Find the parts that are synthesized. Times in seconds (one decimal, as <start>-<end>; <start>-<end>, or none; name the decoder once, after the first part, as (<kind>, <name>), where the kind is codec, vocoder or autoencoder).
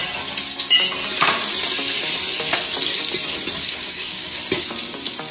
3.6-4.4 (codec, DAC)